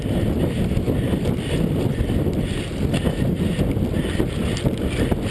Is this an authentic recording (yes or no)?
yes